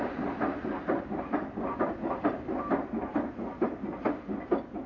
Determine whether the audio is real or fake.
real